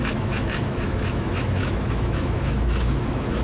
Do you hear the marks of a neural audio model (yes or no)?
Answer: yes